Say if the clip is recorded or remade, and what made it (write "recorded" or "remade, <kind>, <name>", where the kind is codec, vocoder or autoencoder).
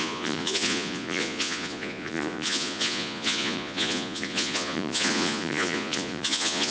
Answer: remade, vocoder, Vocos